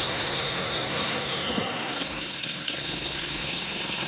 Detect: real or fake fake